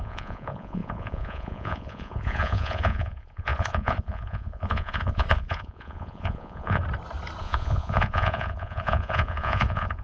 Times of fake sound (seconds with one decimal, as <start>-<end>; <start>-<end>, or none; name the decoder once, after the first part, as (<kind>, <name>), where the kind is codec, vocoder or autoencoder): 0.0-6.8 (vocoder, Vocos); 7.4-10.0